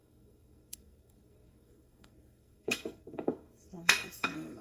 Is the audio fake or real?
fake